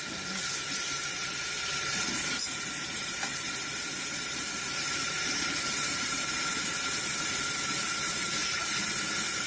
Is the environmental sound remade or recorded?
remade